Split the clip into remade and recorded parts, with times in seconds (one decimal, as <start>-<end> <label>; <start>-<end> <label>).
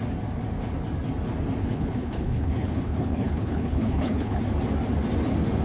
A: 0.0-1.6 recorded; 1.6-4.4 remade; 4.4-5.6 recorded